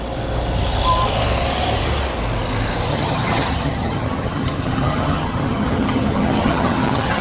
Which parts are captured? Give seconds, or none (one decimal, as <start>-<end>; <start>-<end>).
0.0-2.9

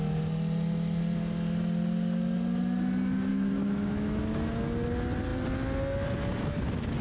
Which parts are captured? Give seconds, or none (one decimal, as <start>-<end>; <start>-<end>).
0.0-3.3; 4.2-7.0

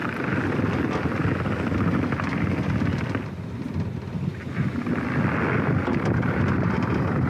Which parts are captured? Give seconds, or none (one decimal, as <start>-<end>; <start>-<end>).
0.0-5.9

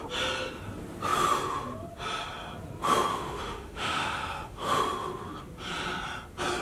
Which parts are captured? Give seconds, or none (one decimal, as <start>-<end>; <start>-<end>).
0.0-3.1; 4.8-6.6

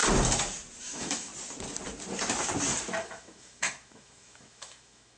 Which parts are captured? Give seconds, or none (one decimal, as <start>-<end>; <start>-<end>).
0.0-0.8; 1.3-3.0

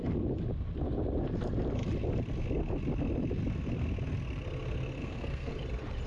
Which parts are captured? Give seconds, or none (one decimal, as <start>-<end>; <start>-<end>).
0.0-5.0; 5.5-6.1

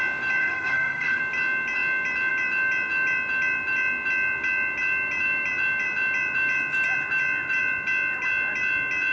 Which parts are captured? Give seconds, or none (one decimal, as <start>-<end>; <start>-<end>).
0.0-0.4; 1.2-9.1

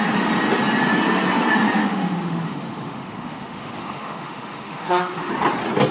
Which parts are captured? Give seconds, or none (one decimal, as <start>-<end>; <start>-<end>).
0.0-1.8; 5.3-5.9